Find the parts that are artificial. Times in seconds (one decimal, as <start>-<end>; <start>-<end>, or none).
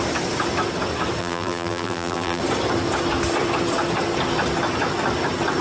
1.2-2.4